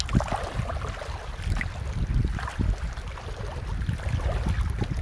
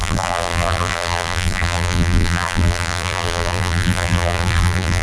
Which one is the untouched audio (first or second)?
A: first